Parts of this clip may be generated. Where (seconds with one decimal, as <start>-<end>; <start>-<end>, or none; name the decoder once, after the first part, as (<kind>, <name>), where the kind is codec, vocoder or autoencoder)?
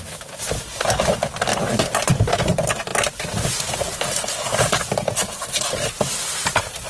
none